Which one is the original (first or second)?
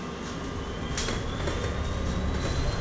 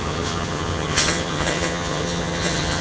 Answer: first